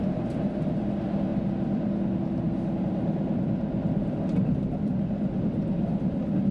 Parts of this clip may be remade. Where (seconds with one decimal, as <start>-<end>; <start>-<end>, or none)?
0.0-1.3; 2.8-6.5